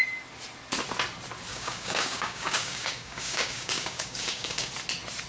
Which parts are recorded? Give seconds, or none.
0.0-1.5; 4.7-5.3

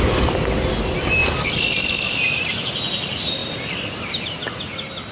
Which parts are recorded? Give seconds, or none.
0.0-5.1

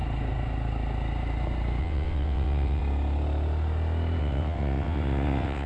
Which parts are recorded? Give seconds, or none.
0.0-1.8; 2.8-4.2

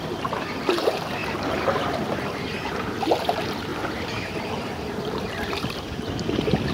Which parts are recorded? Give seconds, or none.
3.7-4.4

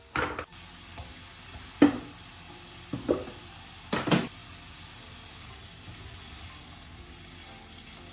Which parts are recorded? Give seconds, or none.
0.0-8.1

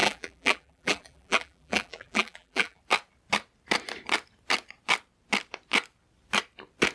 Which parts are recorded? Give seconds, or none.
2.8-6.9

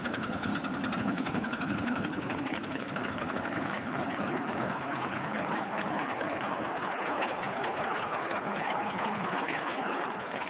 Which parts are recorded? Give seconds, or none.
0.5-1.0